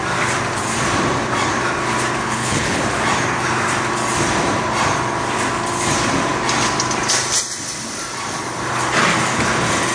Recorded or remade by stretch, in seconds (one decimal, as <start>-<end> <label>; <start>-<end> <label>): 0.0-2.2 recorded; 2.2-2.8 remade; 2.8-9.9 recorded